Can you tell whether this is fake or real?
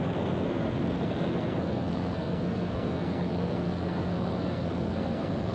fake